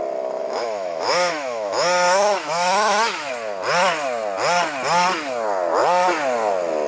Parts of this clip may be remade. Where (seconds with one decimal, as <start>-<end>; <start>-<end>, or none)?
0.4-3.3